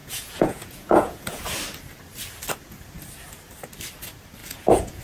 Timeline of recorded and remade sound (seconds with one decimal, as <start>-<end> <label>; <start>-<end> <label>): 0.0-1.4 remade; 1.4-4.4 recorded; 4.4-5.0 remade